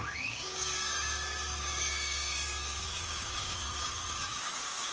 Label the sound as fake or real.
fake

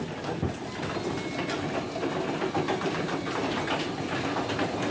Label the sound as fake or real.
real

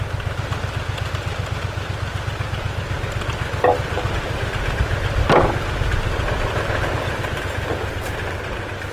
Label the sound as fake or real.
real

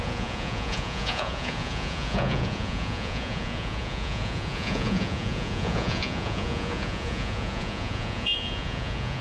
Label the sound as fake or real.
fake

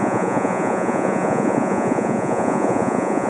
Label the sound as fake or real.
fake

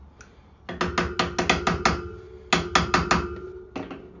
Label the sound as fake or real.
real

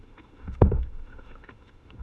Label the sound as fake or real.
fake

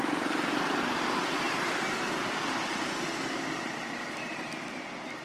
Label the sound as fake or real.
real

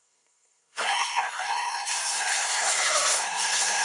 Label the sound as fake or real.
fake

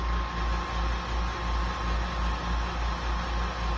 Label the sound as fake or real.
real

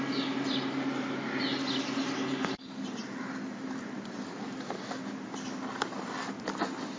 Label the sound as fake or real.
real